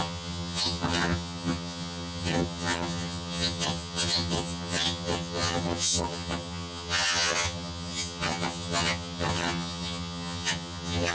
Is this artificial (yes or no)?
yes